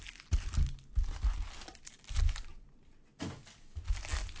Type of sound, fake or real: real